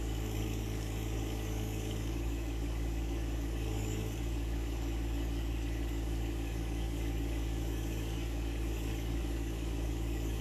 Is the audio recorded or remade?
remade